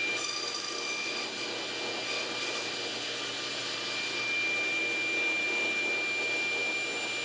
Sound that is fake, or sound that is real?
real